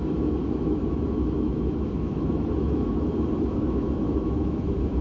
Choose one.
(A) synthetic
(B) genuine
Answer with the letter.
A